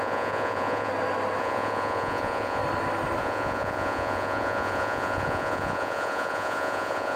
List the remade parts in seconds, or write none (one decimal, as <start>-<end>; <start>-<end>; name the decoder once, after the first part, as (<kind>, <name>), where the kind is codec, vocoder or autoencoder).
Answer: 0.0-0.9 (vocoder, Vocos); 1.4-2.6; 3.2-7.2